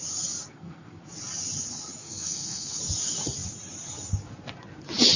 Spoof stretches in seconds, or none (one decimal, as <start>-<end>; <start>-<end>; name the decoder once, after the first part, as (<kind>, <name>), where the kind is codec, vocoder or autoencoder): 0.5-1.0 (codec, SNAC); 2.0-2.8